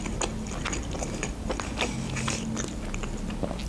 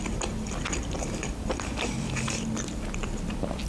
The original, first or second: first